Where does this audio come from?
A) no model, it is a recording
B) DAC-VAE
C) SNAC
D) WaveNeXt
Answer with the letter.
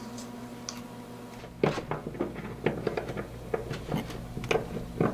A